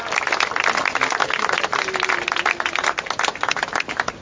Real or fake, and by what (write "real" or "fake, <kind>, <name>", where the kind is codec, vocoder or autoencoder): real